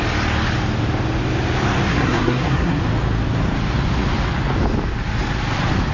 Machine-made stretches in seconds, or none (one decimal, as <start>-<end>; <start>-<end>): 1.9-2.8